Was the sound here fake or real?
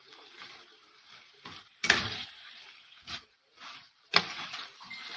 fake